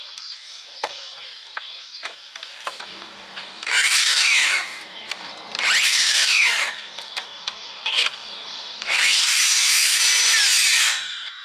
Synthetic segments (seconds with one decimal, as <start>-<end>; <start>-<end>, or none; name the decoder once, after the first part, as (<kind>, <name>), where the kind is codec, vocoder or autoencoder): 0.0-5.3 (codec, DAC); 5.8-10.0; 10.8-11.4